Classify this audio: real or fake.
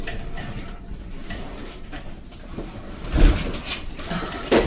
fake